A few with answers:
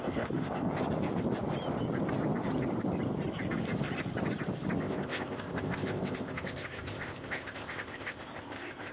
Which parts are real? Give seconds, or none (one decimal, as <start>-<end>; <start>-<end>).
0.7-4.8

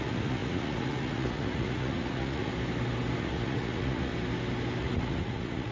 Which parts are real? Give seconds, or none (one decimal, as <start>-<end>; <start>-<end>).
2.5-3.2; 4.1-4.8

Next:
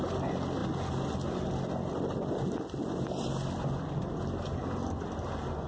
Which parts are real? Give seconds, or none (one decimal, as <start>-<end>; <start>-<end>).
0.0-5.7

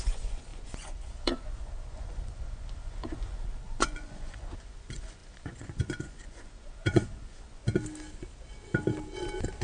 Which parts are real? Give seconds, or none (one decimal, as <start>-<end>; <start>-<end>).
7.6-9.6

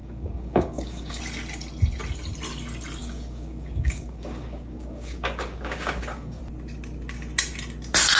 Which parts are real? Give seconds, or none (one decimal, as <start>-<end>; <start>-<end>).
1.2-3.0; 6.4-8.2

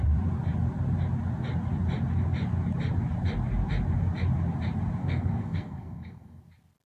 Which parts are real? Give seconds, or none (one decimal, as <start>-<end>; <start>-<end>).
0.0-5.0; 6.4-6.9

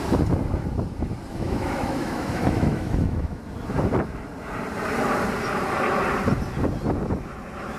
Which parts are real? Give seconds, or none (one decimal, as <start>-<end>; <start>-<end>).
0.0-1.3; 3.4-7.8